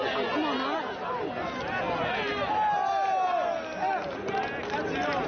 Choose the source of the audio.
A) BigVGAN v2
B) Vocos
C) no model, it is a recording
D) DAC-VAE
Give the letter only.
C